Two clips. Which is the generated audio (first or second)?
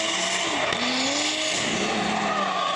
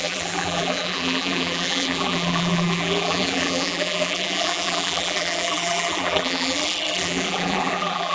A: second